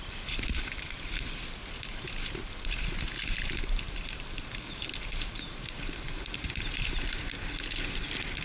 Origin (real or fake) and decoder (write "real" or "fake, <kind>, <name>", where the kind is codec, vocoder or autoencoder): real